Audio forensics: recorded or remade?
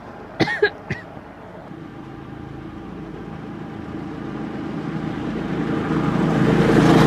recorded